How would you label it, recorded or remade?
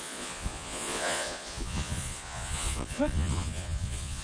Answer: remade